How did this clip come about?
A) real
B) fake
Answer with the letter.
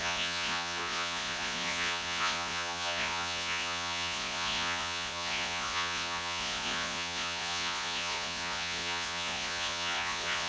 B